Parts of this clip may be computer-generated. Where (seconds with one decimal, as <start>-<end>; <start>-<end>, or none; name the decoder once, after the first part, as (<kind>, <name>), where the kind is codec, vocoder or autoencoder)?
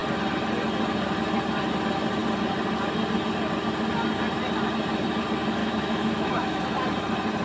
5.6-6.6 (autoencoder, DAC-VAE)